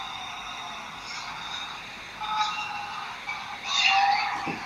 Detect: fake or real real